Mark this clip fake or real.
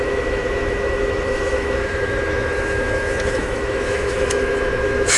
fake